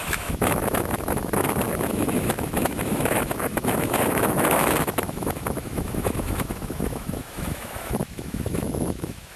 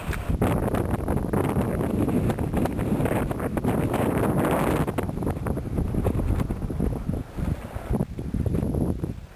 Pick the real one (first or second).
second